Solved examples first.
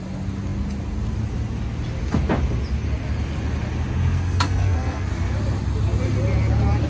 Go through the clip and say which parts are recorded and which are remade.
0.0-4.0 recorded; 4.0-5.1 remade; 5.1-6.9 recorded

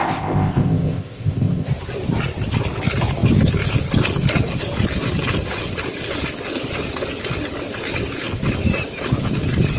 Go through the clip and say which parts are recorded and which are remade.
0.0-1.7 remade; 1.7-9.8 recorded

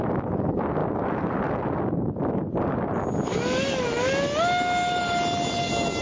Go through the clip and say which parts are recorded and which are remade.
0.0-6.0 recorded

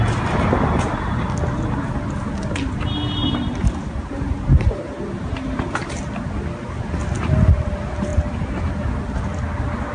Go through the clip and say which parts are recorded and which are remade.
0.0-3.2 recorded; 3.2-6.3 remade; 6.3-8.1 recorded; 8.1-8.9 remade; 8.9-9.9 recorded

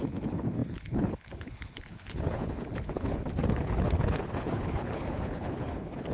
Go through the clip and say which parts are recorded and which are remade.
0.0-6.1 remade